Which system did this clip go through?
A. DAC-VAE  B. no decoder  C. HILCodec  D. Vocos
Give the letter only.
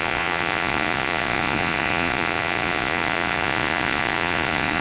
D